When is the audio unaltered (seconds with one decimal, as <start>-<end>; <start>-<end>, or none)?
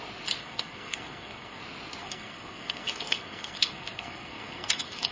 0.0-0.4; 1.6-2.0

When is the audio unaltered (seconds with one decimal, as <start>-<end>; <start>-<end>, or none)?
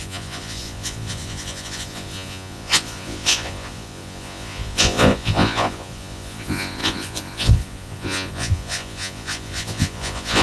none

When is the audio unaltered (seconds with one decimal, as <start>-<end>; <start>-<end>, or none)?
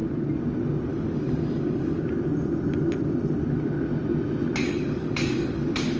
0.0-0.9; 2.0-4.6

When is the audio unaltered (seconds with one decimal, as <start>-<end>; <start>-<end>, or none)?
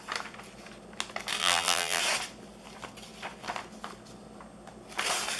0.0-1.4; 2.0-5.4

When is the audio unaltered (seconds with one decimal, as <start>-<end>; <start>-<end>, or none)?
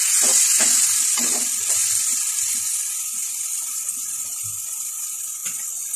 0.0-6.0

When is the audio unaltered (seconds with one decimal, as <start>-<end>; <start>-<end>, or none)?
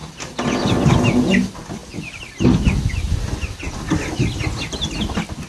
0.0-5.5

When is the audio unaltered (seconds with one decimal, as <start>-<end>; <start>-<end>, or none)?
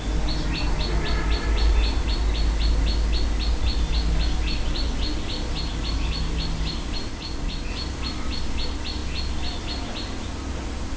0.0-7.1; 7.7-11.0